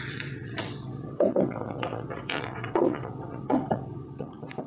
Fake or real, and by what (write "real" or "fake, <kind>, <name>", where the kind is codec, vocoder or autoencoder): fake, vocoder, WaveNeXt